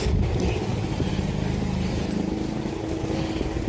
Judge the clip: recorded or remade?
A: recorded